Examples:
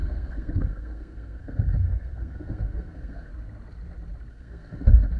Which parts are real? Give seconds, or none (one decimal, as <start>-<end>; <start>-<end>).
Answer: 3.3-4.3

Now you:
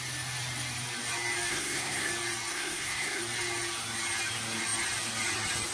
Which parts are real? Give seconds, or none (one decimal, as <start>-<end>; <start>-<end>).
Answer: 0.0-1.5; 2.1-2.5; 3.2-5.7

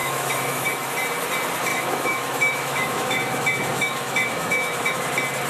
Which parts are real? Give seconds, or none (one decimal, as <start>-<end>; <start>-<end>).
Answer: 0.9-1.7; 5.0-5.5

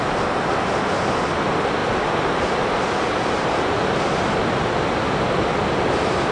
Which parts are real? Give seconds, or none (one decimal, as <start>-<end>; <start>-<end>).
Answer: 0.0-6.3